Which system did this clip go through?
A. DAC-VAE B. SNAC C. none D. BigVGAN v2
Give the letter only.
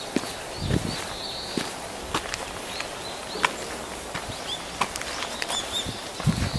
C